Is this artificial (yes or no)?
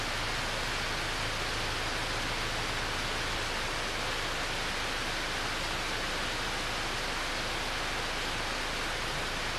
no